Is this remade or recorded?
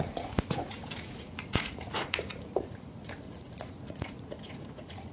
remade